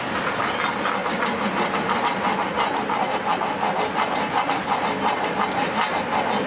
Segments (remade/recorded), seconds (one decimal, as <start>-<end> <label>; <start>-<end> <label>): 0.0-6.5 recorded